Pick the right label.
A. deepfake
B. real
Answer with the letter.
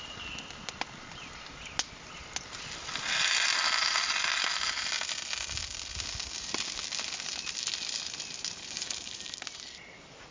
B